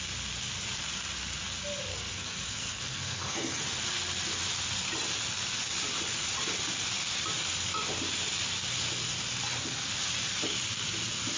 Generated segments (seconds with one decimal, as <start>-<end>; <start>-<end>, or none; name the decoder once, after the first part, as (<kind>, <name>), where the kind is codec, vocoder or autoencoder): 1.9-3.6 (codec, SNAC)